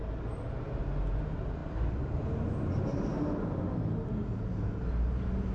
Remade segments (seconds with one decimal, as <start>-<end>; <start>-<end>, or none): none